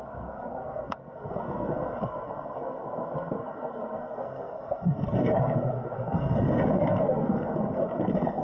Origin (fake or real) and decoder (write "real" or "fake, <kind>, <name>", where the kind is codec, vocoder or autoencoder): fake, codec, SNAC